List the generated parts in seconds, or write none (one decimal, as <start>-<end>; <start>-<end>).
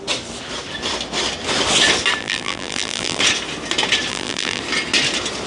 2.2-3.2; 4.1-4.6